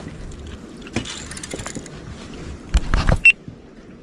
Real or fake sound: real